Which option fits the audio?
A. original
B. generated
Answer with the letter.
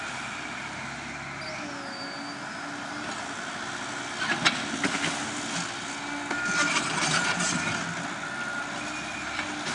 A